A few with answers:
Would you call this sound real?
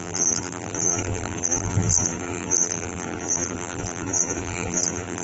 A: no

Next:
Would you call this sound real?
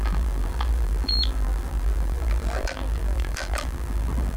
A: no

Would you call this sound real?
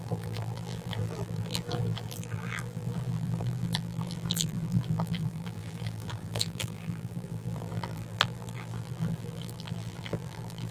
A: no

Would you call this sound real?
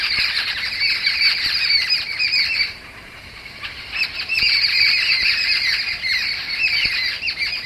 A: no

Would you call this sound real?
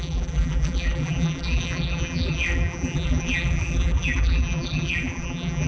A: no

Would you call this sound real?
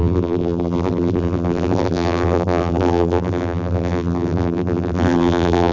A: no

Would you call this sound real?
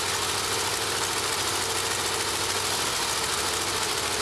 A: yes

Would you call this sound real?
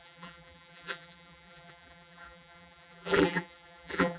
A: no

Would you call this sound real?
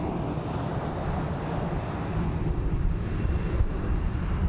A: yes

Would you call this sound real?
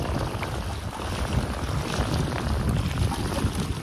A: yes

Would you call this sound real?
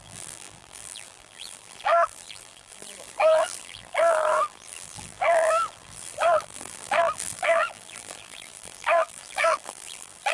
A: no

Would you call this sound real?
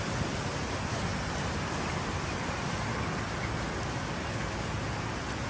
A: yes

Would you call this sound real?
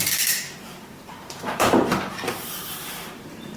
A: no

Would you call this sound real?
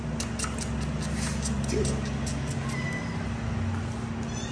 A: yes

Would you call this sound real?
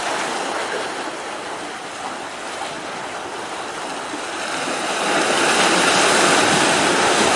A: yes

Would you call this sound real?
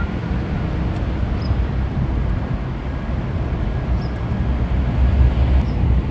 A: yes